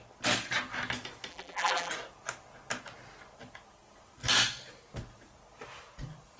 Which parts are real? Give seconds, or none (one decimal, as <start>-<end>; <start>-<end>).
0.0-1.3; 1.9-6.4

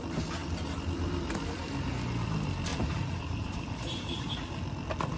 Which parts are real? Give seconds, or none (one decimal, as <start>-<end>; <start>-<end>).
0.0-2.7; 4.4-5.2

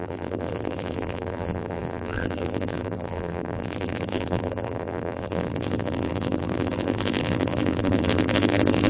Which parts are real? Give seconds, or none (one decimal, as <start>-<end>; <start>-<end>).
none

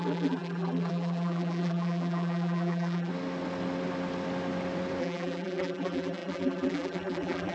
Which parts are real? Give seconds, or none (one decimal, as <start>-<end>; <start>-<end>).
3.1-5.0

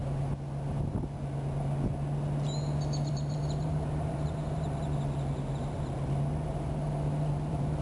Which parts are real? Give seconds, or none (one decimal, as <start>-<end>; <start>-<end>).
0.0-3.1; 4.8-6.5